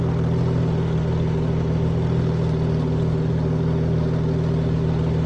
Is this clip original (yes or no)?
yes